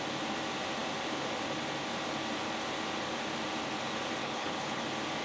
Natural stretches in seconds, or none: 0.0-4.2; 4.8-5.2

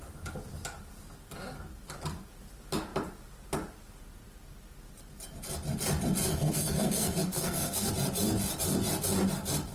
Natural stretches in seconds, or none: 0.0-6.3; 7.9-9.7

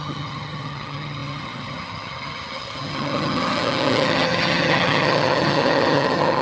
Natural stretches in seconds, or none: none

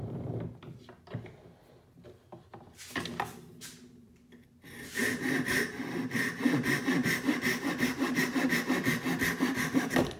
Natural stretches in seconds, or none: 0.0-5.0; 6.0-7.0; 7.7-10.2

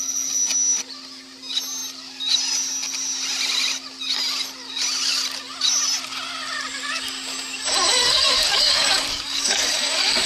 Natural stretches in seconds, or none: 0.0-7.9

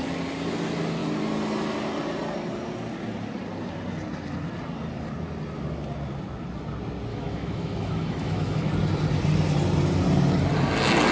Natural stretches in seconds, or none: 0.0-7.1; 8.7-11.1

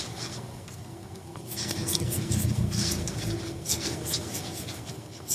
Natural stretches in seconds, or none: none